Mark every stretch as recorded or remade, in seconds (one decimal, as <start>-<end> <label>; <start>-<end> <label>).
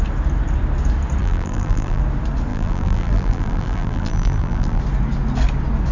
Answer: 0.0-1.2 recorded; 1.2-2.0 remade; 2.0-2.5 recorded; 2.5-4.8 remade; 4.8-5.9 recorded